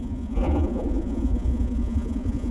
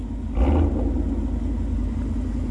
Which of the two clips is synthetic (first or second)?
first